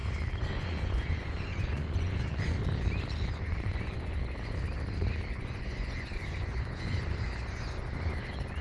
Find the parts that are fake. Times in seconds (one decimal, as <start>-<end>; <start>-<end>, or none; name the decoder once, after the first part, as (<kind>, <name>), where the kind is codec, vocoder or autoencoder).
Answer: 0.5-2.6 (vocoder, Vocos); 3.3-4.2; 5.3-8.6